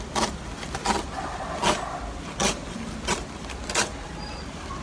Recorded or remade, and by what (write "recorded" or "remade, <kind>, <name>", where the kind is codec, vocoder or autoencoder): recorded